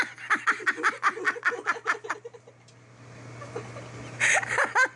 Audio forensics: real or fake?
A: real